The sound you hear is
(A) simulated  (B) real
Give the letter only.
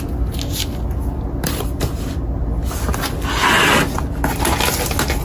B